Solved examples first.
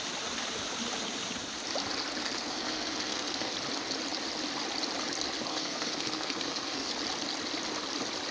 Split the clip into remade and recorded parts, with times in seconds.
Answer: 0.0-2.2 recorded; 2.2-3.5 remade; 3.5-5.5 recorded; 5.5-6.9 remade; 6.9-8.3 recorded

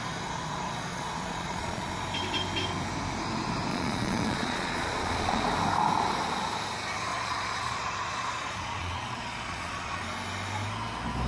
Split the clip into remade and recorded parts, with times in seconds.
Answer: 0.0-0.9 recorded; 0.9-1.9 remade; 1.9-3.7 recorded; 3.7-5.4 remade; 5.4-7.1 recorded; 7.1-10.0 remade; 10.0-11.3 recorded

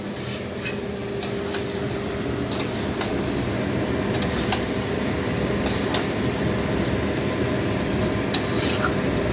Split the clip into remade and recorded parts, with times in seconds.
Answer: 0.0-9.3 recorded

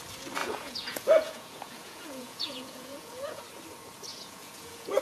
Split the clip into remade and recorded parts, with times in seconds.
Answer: 0.0-0.4 recorded; 0.4-3.4 remade; 3.4-4.1 recorded; 4.1-5.0 remade

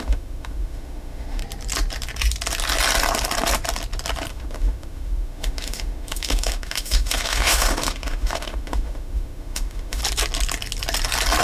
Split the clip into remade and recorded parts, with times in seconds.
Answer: 0.0-1.4 remade; 1.4-4.3 recorded; 4.3-10.0 remade; 10.0-11.4 recorded

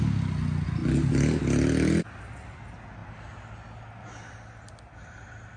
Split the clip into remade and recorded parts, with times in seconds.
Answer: 0.0-5.6 recorded

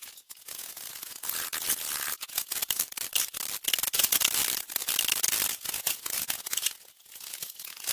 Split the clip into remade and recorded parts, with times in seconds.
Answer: 0.0-2.6 remade; 2.6-5.5 recorded; 5.5-7.9 remade